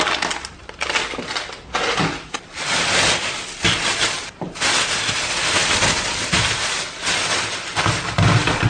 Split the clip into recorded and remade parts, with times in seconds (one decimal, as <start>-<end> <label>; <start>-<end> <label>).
0.0-8.7 recorded